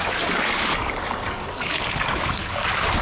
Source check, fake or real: fake